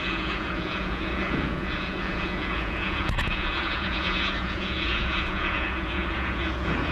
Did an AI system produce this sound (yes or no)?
yes